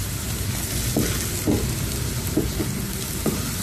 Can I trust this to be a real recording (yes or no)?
yes